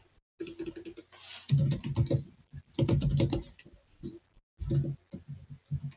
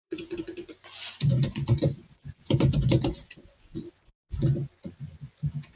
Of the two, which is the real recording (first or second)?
first